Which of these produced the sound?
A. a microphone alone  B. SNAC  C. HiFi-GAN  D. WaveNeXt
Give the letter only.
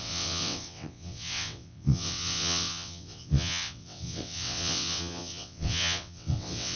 D